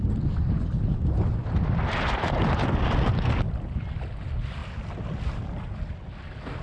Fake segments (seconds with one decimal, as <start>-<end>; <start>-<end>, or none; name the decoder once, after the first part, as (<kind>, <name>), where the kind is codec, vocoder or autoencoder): none